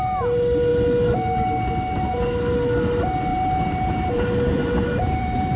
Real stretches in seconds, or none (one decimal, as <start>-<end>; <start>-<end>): 0.0-3.3